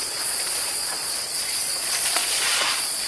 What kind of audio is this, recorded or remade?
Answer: remade